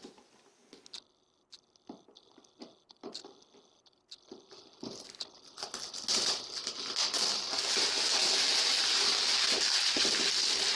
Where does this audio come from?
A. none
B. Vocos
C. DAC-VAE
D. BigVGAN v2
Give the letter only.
A